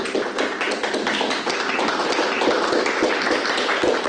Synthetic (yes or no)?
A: no